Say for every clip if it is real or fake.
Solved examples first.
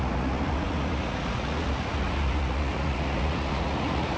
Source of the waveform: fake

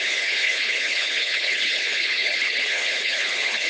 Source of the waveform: fake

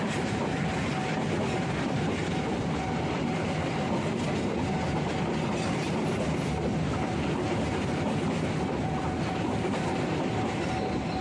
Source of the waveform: fake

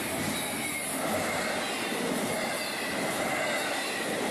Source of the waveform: real